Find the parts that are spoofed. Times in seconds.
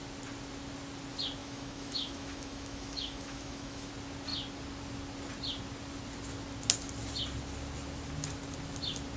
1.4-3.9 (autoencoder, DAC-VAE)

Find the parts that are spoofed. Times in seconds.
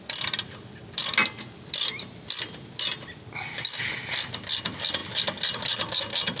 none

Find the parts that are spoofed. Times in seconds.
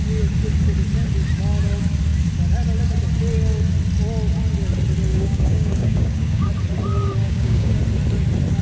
5.1-6.5 (codec, DAC); 7.2-7.8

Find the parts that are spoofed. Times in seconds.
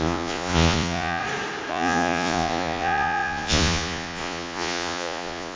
0.0-1.2 (vocoder, Vocos); 1.7-5.6